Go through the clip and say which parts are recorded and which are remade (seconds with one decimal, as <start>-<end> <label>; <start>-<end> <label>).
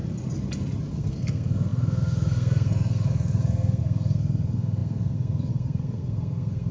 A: 0.0-0.9 recorded; 0.9-6.7 remade